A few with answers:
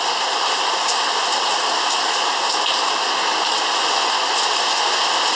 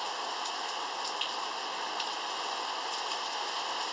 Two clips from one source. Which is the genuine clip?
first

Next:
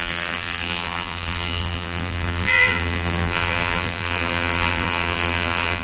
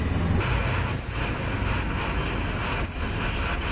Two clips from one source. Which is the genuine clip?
second